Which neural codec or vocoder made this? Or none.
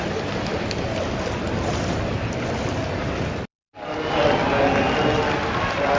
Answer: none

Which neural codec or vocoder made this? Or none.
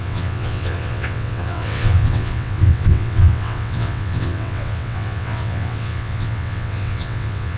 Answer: vocoder, WaveNeXt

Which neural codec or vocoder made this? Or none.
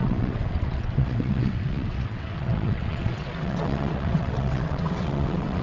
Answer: vocoder, WaveNeXt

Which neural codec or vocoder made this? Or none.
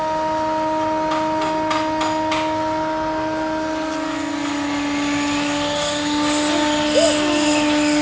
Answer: none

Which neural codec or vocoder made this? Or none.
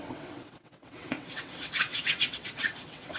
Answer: vocoder, WaveNeXt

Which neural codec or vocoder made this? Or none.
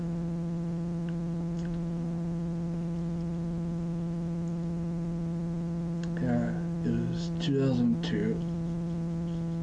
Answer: none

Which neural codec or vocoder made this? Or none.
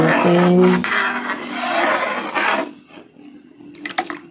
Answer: none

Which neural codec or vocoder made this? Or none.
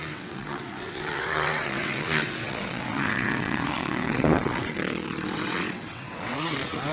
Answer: vocoder, WaveNeXt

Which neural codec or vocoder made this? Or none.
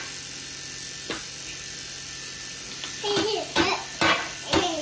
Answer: none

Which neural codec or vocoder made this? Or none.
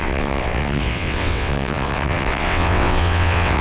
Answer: vocoder, WaveNeXt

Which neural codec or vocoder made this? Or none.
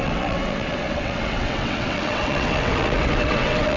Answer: vocoder, WaveNeXt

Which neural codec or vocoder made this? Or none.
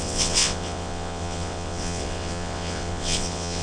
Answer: vocoder, WaveNeXt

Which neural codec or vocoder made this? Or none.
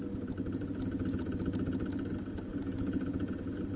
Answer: none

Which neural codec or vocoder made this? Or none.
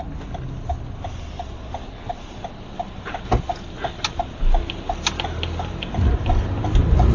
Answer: none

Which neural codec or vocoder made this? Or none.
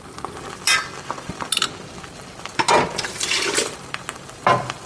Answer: none